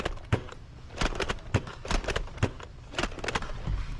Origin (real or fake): fake